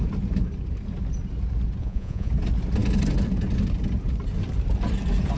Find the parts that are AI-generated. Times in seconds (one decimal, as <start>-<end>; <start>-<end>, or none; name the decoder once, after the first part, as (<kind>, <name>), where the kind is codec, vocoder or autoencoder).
1.8-2.3 (vocoder, Vocos)